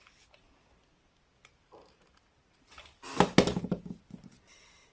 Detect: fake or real real